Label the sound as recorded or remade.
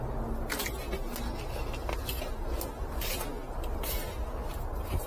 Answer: recorded